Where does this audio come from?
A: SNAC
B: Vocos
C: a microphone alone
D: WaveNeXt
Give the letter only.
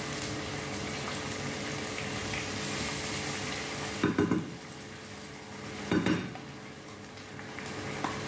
C